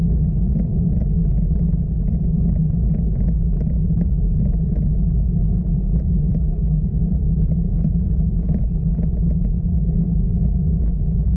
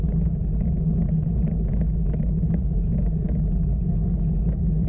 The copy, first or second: first